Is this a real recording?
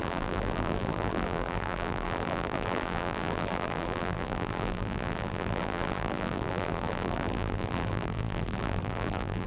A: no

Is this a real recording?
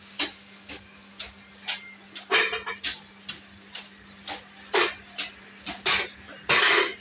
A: yes